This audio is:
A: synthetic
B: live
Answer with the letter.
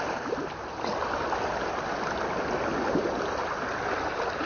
B